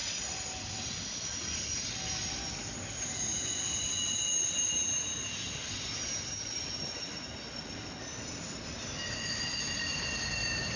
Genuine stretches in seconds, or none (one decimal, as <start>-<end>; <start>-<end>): 1.9-9.9